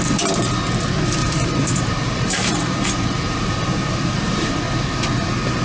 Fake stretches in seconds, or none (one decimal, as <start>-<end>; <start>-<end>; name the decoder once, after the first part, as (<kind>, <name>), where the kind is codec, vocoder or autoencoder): 1.2-4.6 (vocoder, BigVGAN v2)